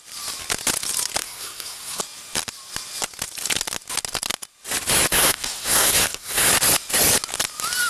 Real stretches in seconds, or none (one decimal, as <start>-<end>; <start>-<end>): 0.0-1.2; 2.0-5.1; 6.5-7.9